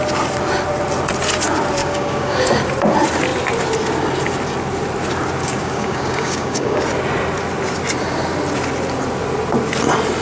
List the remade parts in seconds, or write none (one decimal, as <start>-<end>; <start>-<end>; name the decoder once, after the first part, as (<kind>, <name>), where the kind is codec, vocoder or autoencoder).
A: 1.8-2.4 (codec, DAC); 5.4-6.8